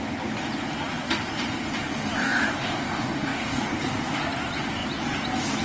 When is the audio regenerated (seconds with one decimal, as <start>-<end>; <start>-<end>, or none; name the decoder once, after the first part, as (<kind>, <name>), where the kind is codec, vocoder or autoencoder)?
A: 2.2-3.8 (codec, DAC)